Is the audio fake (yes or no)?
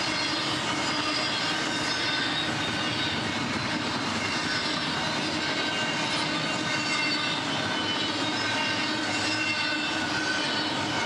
no